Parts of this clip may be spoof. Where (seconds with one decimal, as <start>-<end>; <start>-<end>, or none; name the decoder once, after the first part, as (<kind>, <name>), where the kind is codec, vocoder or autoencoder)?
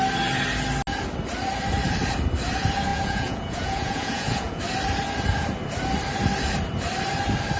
2.9-4.6 (vocoder, Vocos)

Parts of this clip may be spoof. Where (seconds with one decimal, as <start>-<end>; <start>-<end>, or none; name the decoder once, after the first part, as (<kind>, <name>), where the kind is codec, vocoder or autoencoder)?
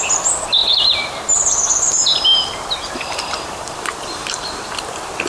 2.3-4.7 (vocoder, BigVGAN v2)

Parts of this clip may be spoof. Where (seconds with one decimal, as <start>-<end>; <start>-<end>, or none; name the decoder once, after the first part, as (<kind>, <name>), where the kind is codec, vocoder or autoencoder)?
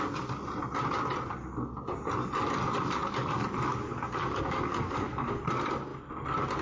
3.0-5.4 (codec, DAC)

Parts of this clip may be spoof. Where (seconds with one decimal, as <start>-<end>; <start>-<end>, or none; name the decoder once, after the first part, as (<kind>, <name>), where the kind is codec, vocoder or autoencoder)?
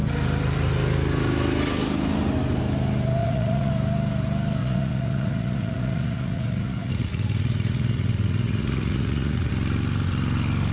3.2-3.7 (vocoder, Vocos); 4.6-9.5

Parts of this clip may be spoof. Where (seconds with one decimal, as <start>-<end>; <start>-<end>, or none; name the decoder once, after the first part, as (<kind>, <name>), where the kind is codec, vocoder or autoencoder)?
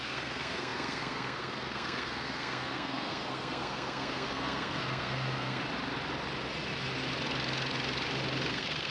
0.0-5.6 (codec, SNAC); 8.5-8.9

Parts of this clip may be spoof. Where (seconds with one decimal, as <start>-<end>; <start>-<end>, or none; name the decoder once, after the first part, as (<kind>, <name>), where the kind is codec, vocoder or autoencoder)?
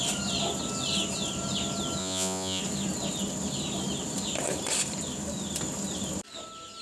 2.0-2.6 (vocoder, Vocos)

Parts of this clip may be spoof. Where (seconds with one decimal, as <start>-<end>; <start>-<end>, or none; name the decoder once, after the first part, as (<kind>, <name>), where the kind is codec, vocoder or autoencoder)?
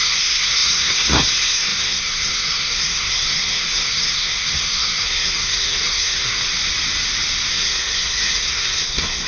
0.0-6.4 (codec, SNAC); 7.5-9.3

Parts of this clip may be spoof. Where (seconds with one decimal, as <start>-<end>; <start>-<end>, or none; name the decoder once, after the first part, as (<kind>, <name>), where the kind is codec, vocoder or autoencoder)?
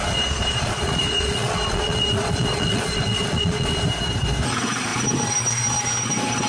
0.0-3.8 (vocoder, Vocos)